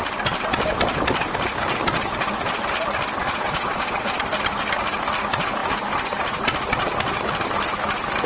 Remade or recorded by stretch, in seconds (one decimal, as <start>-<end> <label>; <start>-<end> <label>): 0.0-3.2 recorded; 3.2-4.2 remade; 4.2-8.3 recorded